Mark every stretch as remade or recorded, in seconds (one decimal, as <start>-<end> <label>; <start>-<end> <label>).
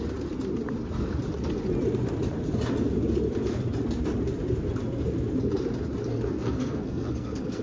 0.0-6.1 recorded; 6.1-7.6 remade